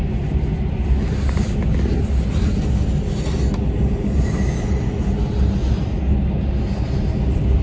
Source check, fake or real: real